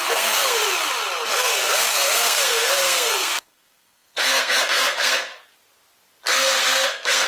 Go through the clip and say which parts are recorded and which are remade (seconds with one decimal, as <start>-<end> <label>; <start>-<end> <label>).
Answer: 0.0-0.6 remade; 0.6-1.3 recorded; 1.3-5.3 remade; 5.3-6.3 recorded; 6.3-7.3 remade